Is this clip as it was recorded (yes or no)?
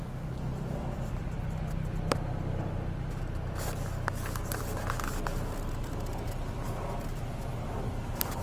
yes